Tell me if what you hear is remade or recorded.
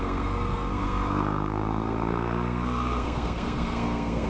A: remade